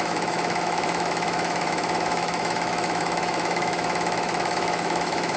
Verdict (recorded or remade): remade